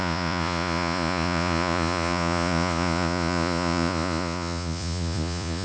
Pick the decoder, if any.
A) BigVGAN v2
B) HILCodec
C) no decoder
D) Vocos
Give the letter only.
D